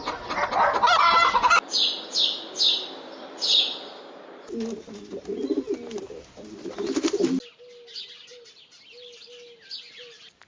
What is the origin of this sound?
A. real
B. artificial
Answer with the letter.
A